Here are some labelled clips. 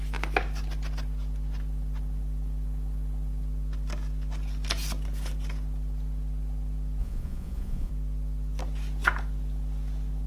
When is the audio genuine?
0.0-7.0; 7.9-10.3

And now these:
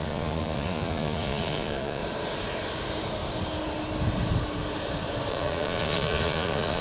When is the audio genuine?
2.0-5.3

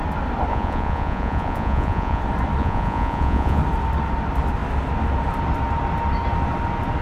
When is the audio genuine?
0.0-0.5; 2.2-2.6; 3.6-7.0

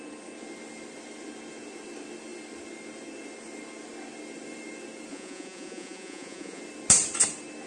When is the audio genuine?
0.0-5.1; 6.6-7.7

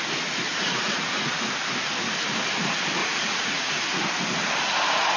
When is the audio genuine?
0.0-0.5; 1.4-3.0; 3.7-5.2

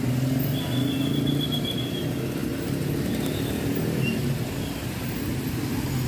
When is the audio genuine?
0.0-6.1

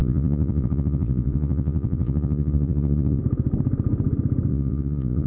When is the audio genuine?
3.2-4.5